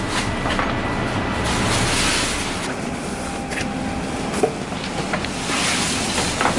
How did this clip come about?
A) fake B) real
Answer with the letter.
B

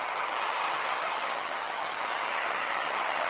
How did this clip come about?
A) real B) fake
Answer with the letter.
B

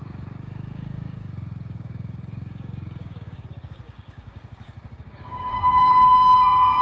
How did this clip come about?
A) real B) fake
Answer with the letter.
B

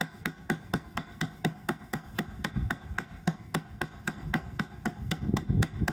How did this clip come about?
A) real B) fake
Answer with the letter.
B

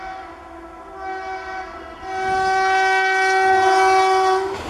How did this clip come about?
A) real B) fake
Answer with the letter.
A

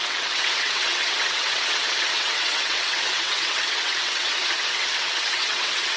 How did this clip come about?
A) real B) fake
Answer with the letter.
B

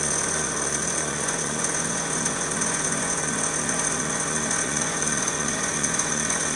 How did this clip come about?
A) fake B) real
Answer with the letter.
A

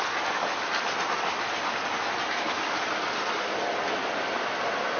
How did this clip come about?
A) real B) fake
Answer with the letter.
A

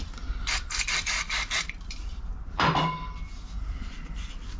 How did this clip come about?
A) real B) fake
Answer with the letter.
A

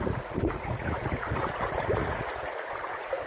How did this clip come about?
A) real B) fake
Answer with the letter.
B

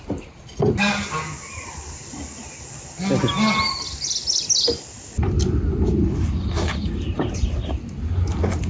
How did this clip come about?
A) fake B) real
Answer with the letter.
B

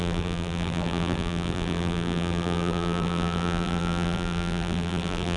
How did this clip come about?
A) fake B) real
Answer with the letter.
A